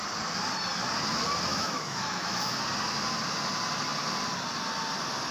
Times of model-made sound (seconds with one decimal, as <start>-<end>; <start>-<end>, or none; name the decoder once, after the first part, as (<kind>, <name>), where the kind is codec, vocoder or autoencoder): 1.5-2.6 (autoencoder, DAC-VAE)